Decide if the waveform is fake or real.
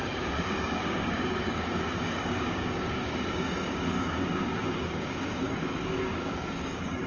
fake